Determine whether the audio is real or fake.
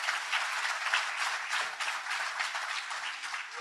real